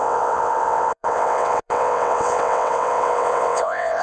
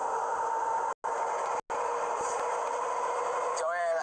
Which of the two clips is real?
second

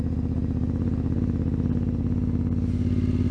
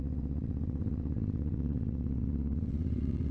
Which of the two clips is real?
first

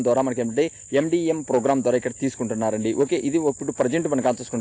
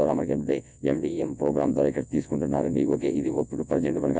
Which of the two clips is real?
first